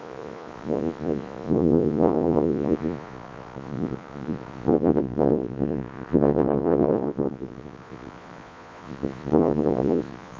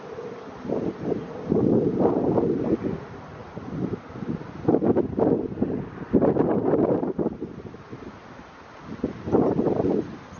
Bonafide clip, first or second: second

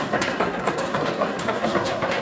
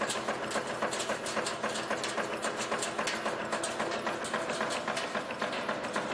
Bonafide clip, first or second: second